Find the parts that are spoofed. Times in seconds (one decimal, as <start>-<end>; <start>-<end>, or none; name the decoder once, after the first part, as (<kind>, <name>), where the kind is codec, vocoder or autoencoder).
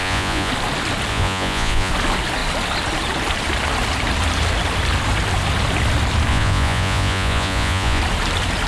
0.0-0.5 (vocoder, Vocos); 1.1-1.9; 6.3-8.0